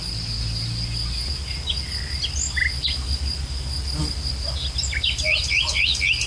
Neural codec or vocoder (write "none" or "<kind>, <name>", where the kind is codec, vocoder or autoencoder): none